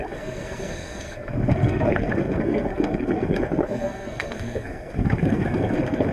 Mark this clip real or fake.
fake